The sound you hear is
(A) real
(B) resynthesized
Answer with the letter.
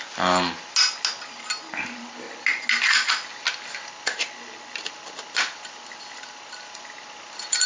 A